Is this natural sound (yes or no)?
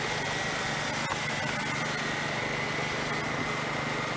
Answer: yes